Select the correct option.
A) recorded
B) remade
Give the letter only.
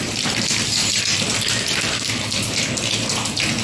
A